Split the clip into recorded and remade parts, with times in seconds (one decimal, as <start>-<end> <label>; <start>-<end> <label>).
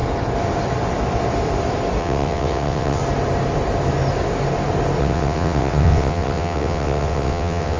0.0-2.0 recorded; 2.0-3.0 remade; 3.0-5.0 recorded; 5.0-7.8 remade